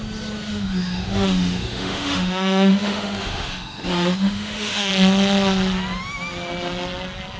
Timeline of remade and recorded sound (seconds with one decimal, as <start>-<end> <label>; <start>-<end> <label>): 0.0-0.5 recorded; 0.5-4.9 remade; 4.9-7.4 recorded